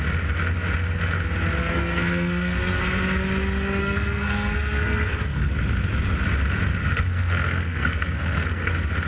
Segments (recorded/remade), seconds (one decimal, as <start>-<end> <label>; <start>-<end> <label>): 0.0-1.6 recorded; 1.6-2.8 remade; 2.8-3.8 recorded; 3.8-5.5 remade; 5.5-6.8 recorded; 6.8-8.7 remade; 8.7-9.1 recorded